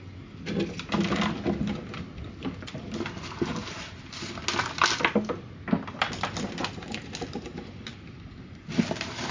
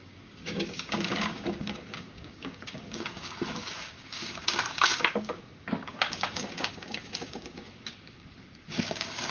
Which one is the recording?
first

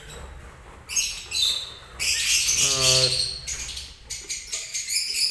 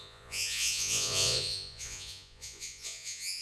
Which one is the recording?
first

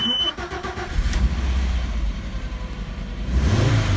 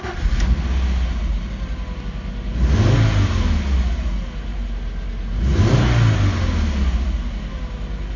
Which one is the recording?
second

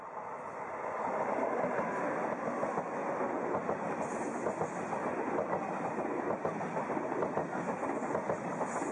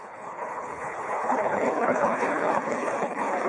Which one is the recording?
first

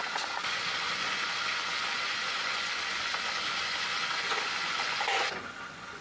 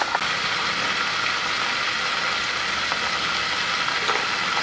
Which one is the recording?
second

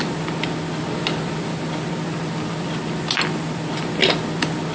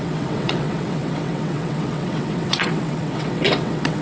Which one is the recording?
first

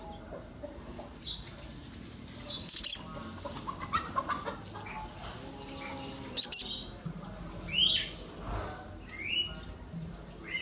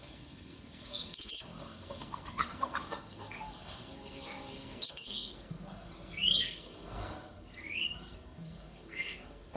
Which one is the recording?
first